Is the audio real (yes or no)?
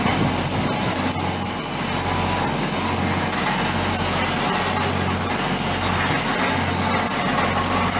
yes